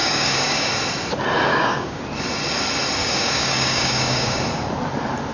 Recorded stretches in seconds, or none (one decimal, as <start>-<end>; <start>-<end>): 0.7-1.5; 2.0-3.0; 4.4-5.3